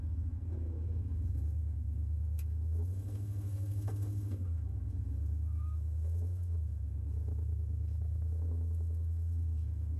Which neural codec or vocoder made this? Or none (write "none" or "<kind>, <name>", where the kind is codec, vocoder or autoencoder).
codec, SNAC